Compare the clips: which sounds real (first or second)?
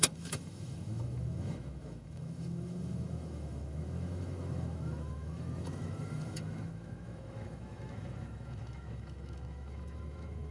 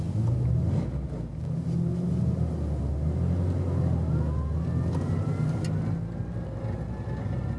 second